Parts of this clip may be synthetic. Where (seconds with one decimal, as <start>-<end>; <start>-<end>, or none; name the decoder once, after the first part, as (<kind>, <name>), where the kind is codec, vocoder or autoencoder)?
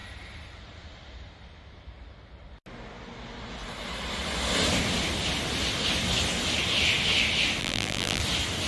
7.6-8.2 (vocoder, BigVGAN v2)